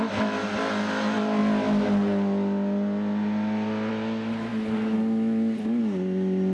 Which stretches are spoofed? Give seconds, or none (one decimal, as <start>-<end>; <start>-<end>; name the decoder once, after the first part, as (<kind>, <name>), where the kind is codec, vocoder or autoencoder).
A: none